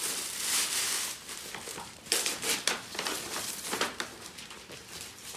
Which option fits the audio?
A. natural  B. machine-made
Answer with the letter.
B